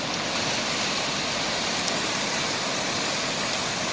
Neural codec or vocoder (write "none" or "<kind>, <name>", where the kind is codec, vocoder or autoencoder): none